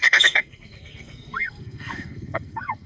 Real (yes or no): no